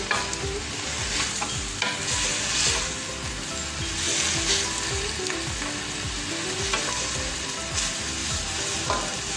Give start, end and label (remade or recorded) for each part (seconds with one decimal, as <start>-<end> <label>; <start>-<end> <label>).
0.0-8.2 recorded; 8.2-9.4 remade